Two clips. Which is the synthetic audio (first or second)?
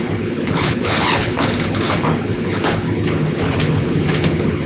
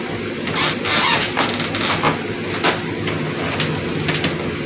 first